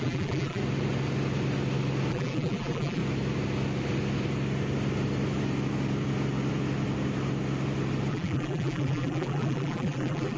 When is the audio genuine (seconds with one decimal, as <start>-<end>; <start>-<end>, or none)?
0.6-2.1; 3.0-8.1